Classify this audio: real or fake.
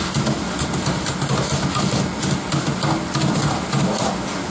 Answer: real